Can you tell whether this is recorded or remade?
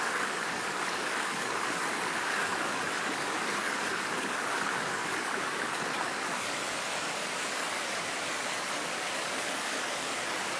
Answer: remade